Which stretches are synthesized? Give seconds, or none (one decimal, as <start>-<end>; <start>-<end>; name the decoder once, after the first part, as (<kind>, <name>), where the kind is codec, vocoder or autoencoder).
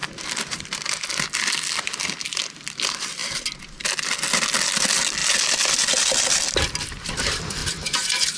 5.2-6.2 (vocoder, BigVGAN v2)